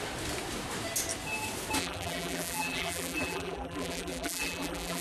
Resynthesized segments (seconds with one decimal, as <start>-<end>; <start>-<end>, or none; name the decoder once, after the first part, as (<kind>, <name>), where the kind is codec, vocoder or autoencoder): 1.8-5.0 (vocoder, BigVGAN v2)